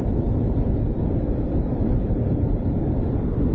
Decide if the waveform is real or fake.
fake